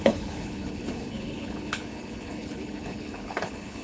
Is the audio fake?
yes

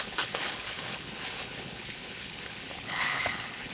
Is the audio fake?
yes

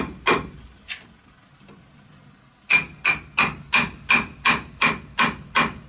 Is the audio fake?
no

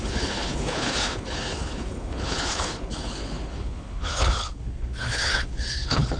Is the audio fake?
yes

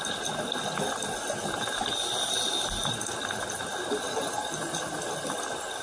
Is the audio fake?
no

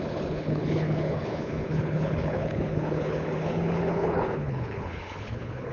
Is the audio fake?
yes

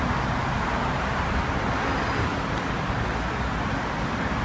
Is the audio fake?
no